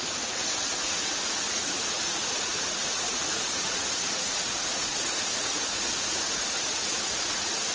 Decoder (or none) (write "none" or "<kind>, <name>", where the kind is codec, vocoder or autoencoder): vocoder, Vocos